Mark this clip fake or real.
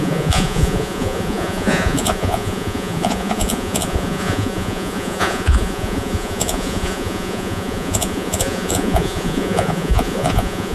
fake